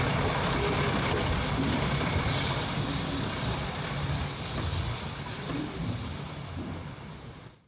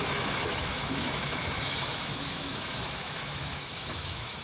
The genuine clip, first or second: first